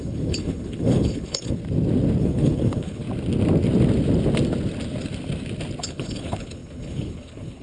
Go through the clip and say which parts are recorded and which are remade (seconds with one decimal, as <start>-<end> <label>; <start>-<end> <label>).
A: 0.0-1.6 remade; 1.6-2.2 recorded; 2.2-3.0 remade; 3.0-5.8 recorded; 5.8-7.6 remade